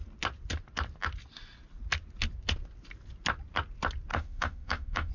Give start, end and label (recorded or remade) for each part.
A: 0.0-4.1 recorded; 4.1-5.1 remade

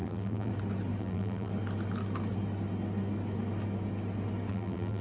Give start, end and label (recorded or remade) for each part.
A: 0.0-0.5 remade; 0.5-1.0 recorded; 1.0-1.5 remade; 1.5-4.5 recorded; 4.5-5.0 remade

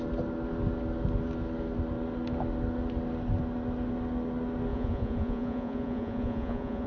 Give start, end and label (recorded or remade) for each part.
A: 0.0-4.7 recorded; 4.7-6.9 remade

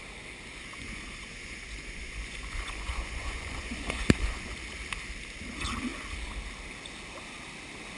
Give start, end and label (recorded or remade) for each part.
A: 0.0-0.8 recorded; 0.8-4.5 remade; 4.5-8.0 recorded

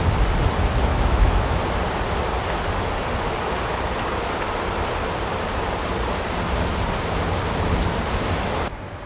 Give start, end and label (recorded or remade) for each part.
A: 0.0-0.9 recorded; 0.9-1.6 remade; 1.6-9.1 recorded

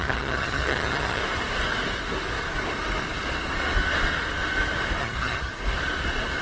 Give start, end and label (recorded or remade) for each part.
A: 0.0-1.2 remade; 1.2-5.0 recorded; 5.0-5.5 remade; 5.5-6.4 recorded

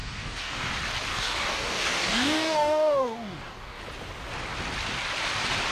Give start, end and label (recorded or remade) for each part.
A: 0.0-0.7 remade; 0.7-1.1 recorded; 1.1-3.8 remade; 3.8-5.7 recorded